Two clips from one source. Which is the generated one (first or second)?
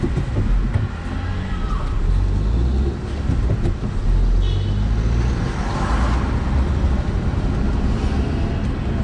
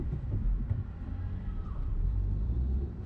second